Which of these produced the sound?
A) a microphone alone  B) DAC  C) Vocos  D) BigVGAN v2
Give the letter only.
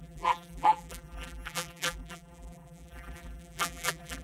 D